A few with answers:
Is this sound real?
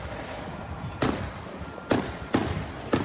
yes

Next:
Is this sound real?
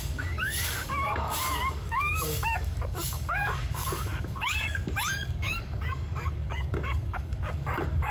no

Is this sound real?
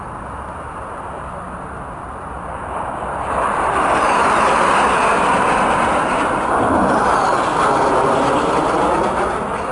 yes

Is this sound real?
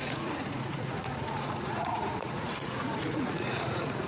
no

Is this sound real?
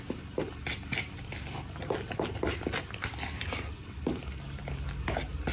yes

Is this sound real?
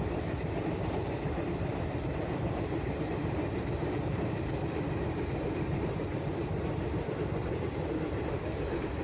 no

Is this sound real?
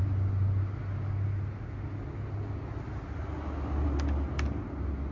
yes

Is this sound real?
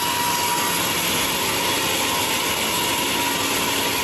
yes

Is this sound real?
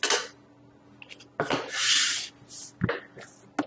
yes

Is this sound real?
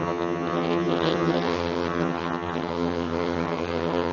no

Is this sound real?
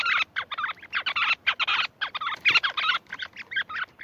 yes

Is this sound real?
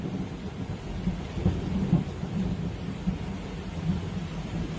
no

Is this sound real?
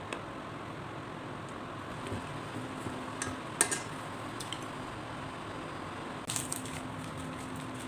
yes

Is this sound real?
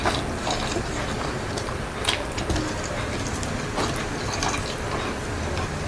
yes